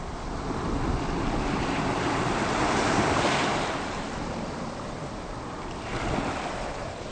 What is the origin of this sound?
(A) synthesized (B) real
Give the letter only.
B